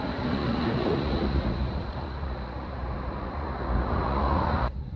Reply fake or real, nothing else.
fake